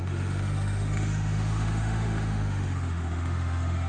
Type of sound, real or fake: fake